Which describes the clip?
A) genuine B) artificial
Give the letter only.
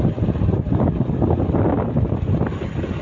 A